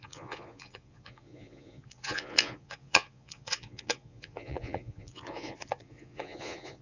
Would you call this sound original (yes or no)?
no